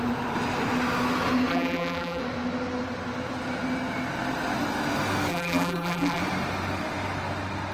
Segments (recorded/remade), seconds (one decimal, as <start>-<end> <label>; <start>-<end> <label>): 0.0-1.5 recorded; 1.5-2.2 remade; 2.2-5.3 recorded; 5.3-6.2 remade; 6.2-7.7 recorded